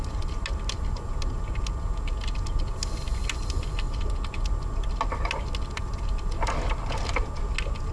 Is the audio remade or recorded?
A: recorded